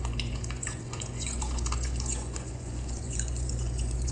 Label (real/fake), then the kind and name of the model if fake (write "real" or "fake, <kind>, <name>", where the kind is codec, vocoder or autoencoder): fake, vocoder, Vocos